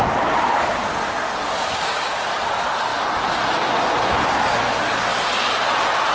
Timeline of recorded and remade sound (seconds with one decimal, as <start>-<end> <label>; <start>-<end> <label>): 0.0-1.5 recorded; 1.5-2.3 remade; 2.3-6.1 recorded